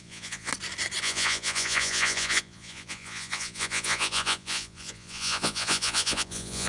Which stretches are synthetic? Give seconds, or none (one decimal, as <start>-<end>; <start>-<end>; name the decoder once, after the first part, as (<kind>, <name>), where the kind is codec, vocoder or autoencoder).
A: 0.0-0.5 (vocoder, Vocos); 1.0-6.7